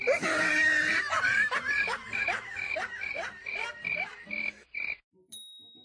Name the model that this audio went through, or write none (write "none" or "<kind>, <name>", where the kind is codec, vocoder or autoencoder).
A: vocoder, BigVGAN v2